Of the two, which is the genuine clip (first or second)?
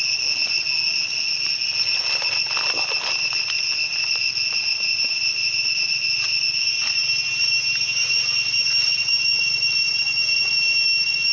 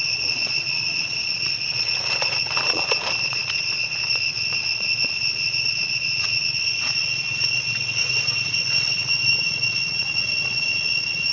first